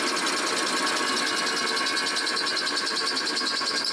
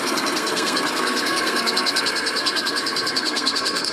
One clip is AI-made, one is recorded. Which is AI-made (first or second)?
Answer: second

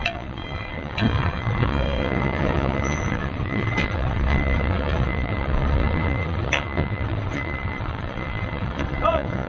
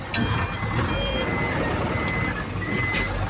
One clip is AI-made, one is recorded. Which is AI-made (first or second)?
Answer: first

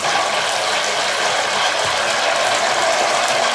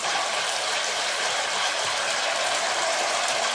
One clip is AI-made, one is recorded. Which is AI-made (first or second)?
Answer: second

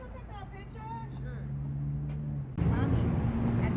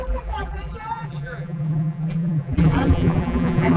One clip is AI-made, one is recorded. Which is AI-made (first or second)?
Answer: second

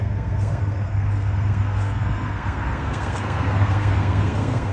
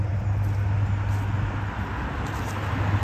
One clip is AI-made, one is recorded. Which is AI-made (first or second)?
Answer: first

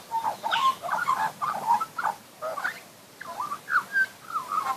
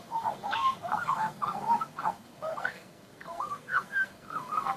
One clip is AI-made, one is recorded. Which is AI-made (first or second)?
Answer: second